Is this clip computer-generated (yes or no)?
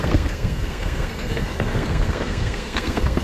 yes